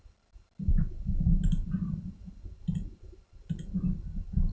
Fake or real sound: real